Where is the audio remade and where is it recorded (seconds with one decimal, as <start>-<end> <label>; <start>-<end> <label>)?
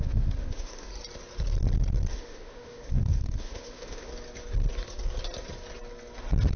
0.0-0.9 remade; 0.9-2.1 recorded; 2.1-4.1 remade; 4.1-6.6 recorded